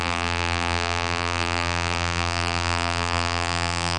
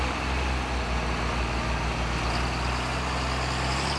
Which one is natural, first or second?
second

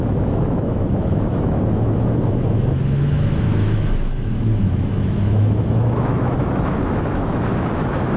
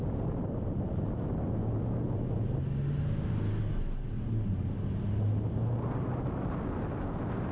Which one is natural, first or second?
second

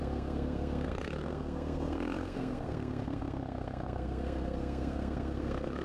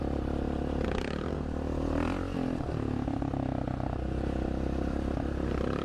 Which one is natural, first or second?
second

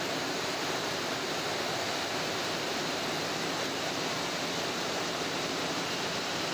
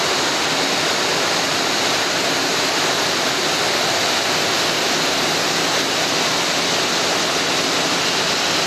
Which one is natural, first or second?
second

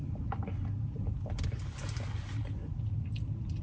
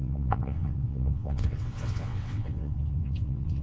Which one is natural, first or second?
first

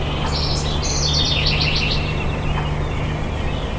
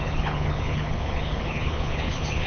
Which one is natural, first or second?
first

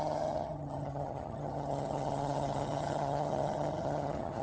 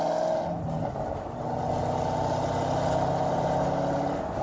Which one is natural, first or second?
second